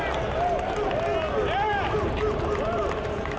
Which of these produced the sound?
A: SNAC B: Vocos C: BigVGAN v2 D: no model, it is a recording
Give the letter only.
D